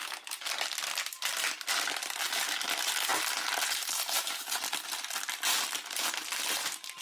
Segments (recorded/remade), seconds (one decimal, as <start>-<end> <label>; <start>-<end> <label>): 0.0-7.0 recorded